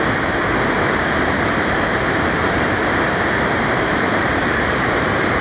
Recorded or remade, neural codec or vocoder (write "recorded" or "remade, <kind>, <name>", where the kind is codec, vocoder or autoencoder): remade, vocoder, BigVGAN v2